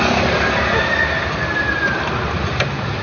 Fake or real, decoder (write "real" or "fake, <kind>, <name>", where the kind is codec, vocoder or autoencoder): real